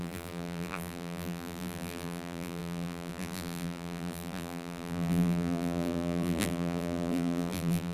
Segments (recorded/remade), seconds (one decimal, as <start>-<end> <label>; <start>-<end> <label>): 0.0-7.9 remade